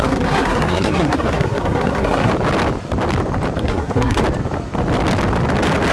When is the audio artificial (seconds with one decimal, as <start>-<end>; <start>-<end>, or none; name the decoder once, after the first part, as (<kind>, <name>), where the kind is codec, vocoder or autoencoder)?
0.0-2.3 (codec, SNAC); 3.6-4.2